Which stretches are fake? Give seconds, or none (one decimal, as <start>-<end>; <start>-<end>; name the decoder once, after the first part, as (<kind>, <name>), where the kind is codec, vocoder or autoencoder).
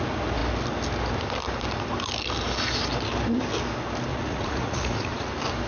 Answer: 4.1-5.3 (vocoder, Vocos)